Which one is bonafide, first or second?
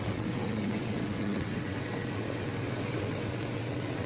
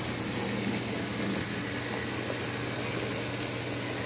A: second